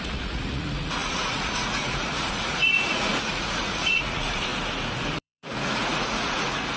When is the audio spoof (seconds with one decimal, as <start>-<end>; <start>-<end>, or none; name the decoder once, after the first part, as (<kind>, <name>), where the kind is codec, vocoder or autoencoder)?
0.0-4.5 (vocoder, Vocos); 5.2-6.8